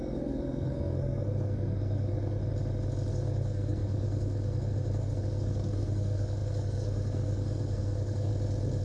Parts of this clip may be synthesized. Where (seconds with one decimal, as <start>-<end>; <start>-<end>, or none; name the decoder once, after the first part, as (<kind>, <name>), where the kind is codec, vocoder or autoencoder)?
0.0-2.4 (codec, SNAC); 3.1-8.3